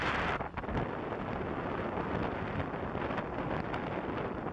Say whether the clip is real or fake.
real